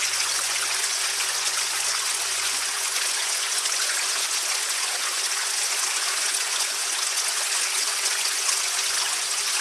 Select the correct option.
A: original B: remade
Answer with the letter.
B